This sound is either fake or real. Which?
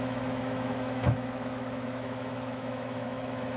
fake